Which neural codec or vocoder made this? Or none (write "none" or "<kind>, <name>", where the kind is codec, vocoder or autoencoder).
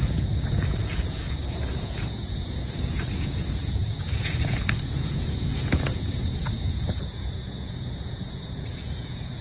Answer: vocoder, Vocos